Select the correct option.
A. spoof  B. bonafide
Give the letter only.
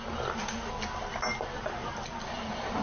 B